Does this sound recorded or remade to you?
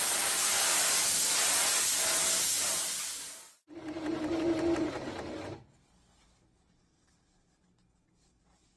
recorded